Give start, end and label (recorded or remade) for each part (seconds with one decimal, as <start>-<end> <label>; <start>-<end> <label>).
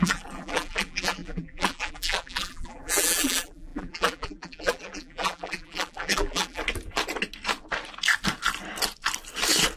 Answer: 0.0-6.6 remade; 6.6-9.8 recorded